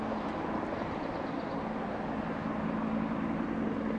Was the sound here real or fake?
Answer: real